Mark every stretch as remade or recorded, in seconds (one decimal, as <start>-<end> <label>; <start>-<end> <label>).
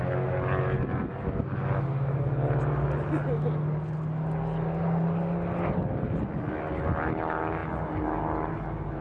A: 0.0-9.0 recorded